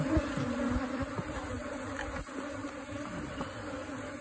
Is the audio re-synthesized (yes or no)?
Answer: no